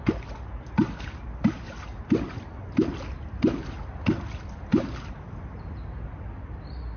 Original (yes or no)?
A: yes